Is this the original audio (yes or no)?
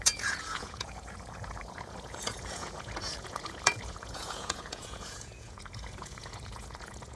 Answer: no